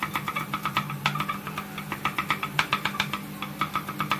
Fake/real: real